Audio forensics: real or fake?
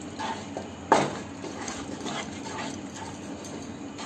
real